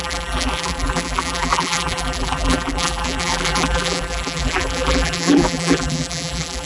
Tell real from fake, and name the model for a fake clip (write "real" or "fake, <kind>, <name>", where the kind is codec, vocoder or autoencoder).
fake, vocoder, BigVGAN v2